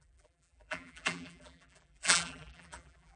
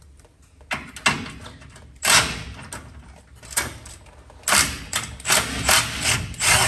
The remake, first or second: first